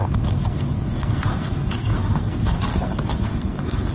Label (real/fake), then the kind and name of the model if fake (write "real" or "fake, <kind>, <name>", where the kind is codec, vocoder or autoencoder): fake, codec, SNAC